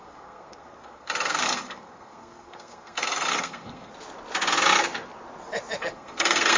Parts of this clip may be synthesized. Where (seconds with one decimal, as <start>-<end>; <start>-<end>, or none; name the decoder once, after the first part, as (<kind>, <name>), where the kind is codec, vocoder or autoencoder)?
0.0-3.9 (codec, SNAC); 5.9-6.6